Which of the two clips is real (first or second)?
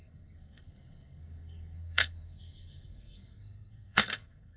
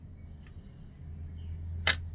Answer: second